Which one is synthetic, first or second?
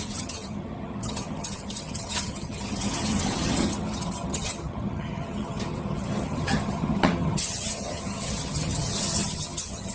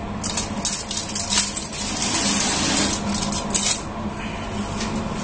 first